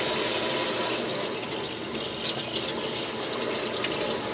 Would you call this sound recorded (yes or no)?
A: yes